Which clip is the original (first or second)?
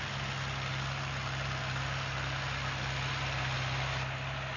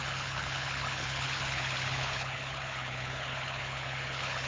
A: first